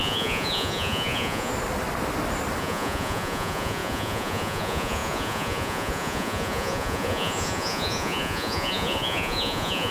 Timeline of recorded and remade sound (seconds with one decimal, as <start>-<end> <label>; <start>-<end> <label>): 0.0-1.5 remade; 1.5-2.6 recorded; 2.6-9.9 remade